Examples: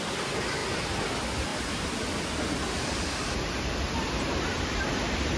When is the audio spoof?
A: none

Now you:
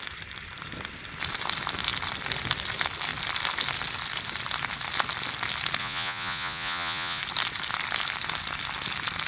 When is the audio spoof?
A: 5.8-7.2 (vocoder, Vocos)

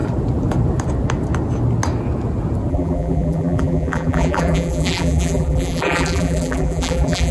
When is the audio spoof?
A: 2.7-7.3 (vocoder, BigVGAN v2)

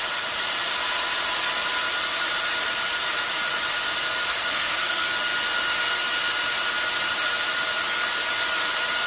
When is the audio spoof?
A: 4.3-5.1 (codec, SNAC)